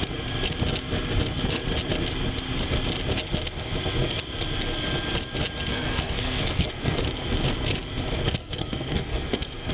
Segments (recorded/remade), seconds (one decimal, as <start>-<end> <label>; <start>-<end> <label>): 0.0-5.7 recorded; 5.7-7.0 remade; 7.0-8.4 recorded; 8.4-9.7 remade